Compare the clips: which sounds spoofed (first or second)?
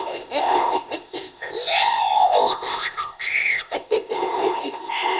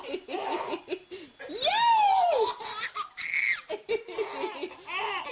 first